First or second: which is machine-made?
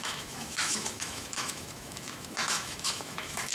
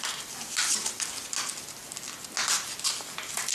first